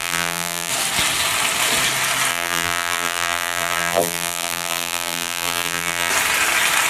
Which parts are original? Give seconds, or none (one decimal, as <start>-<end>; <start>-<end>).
0.7-2.3; 6.1-6.9